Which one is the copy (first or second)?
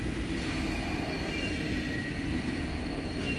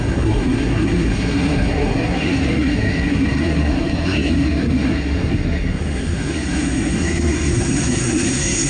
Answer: second